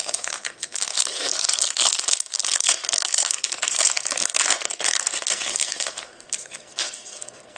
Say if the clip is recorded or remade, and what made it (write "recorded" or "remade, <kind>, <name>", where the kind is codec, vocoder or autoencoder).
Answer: remade, codec, SNAC